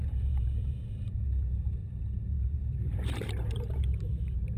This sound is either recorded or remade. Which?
remade